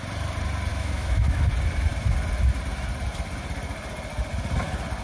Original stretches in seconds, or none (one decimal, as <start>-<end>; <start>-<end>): 0.0-0.7; 1.5-5.0